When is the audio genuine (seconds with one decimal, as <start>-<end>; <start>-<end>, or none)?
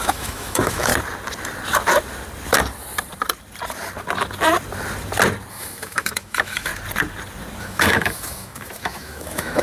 0.9-5.5; 6.7-7.6